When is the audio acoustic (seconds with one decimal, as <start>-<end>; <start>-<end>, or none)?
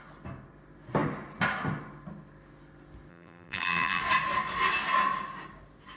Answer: 0.0-3.1; 4.0-6.0